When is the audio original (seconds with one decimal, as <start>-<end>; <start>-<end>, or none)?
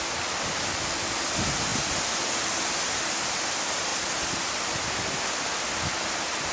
0.0-6.5